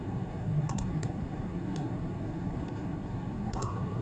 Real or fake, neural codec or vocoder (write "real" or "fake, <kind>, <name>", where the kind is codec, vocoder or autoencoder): fake, codec, SNAC